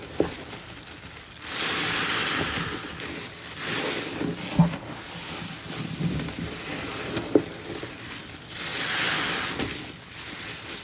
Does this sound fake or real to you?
real